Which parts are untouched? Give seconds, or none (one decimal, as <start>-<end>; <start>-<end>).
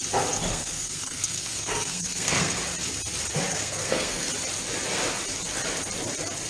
0.0-0.5; 2.6-3.5; 4.3-6.5